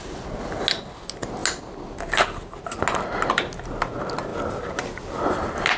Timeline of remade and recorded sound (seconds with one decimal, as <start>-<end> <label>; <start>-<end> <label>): 0.0-5.8 recorded